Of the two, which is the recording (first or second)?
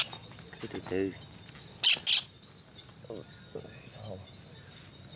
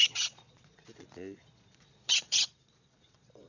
first